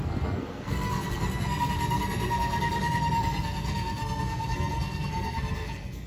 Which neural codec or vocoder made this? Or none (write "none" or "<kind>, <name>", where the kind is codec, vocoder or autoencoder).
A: codec, SNAC